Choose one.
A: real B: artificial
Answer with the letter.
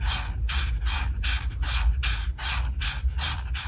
A